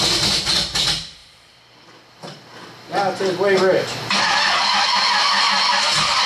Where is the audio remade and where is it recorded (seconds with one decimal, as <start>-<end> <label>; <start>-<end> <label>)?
0.0-6.3 recorded